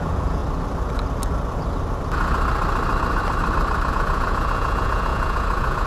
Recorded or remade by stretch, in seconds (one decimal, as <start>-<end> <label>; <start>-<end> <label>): 0.0-0.4 remade; 0.4-3.9 recorded; 3.9-5.9 remade